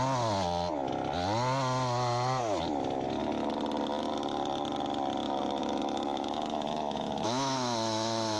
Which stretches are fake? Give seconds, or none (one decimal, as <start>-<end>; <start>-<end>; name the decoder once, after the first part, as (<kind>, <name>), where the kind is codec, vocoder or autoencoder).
5.6-8.4 (autoencoder, DAC-VAE)